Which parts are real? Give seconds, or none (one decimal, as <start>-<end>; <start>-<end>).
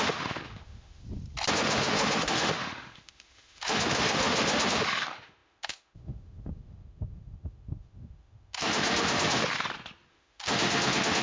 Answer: 1.0-1.5; 9.4-10.1